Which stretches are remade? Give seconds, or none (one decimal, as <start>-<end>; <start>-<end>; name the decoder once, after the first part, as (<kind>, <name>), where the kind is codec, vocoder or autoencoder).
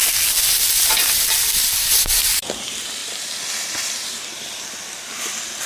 1.4-2.2 (vocoder, BigVGAN v2); 3.0-5.0